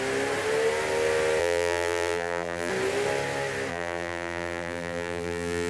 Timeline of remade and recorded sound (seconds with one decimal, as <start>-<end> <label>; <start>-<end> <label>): 0.0-1.4 recorded; 1.4-2.7 remade; 2.7-3.7 recorded; 3.7-5.7 remade